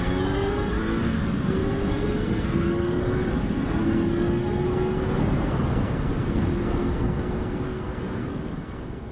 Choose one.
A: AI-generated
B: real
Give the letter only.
A